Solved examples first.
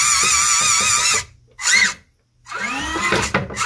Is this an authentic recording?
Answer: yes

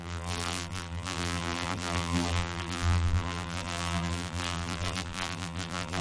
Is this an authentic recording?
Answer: no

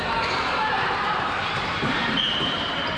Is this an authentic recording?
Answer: no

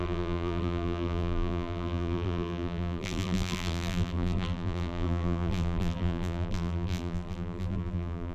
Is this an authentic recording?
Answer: no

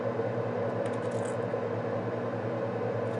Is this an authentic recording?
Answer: yes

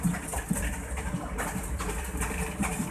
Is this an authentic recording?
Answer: yes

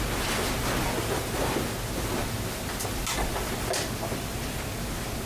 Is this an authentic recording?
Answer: yes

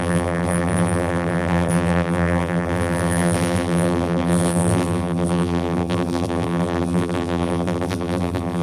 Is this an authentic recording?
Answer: no